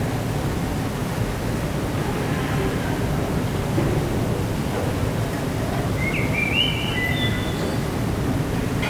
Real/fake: real